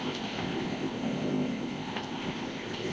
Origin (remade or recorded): remade